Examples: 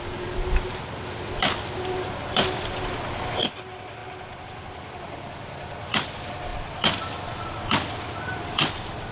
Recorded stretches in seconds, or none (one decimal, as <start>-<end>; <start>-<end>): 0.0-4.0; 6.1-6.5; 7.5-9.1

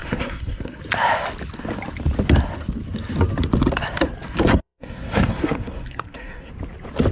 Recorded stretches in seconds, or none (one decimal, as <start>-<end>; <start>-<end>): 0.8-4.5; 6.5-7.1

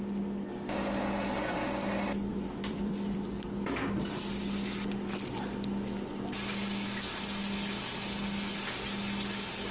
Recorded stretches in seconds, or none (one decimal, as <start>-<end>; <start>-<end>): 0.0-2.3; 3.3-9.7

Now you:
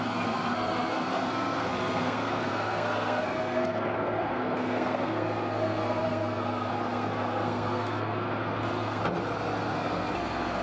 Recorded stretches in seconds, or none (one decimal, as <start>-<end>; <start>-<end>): 9.0-9.6